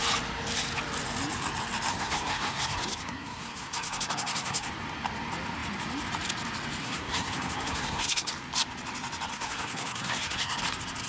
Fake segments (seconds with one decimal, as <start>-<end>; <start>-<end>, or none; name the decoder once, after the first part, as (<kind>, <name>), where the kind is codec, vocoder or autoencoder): 1.9-4.7 (codec, SNAC); 6.8-8.3; 9.3-10.6